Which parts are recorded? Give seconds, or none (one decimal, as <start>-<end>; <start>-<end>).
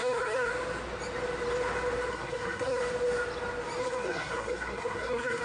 0.5-2.1; 2.8-3.8